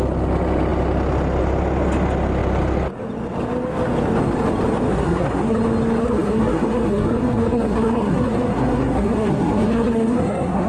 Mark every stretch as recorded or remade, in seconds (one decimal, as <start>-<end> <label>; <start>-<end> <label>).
0.0-4.9 recorded; 4.9-5.6 remade; 5.6-6.0 recorded; 6.0-10.7 remade